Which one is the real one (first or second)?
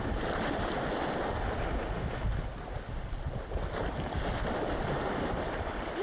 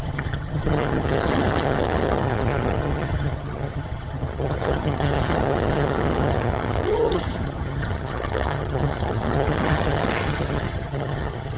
first